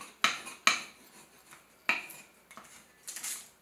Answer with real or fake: real